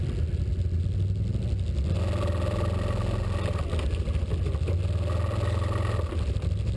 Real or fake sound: real